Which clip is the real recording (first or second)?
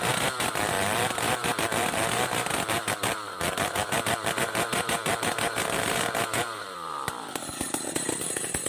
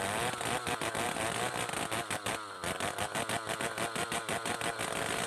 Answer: second